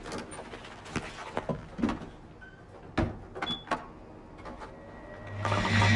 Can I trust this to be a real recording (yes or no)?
yes